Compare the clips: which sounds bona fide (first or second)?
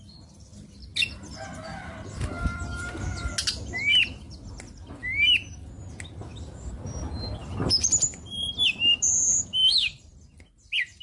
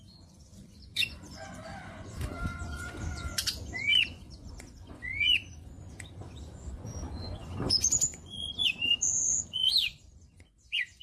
first